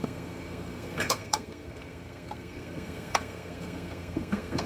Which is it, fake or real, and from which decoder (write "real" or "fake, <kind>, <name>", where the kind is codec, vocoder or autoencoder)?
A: fake, codec, SNAC